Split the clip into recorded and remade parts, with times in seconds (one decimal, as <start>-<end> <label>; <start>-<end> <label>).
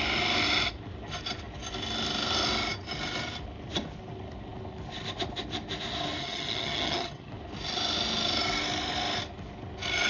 0.0-6.2 recorded; 6.2-7.3 remade; 7.3-10.1 recorded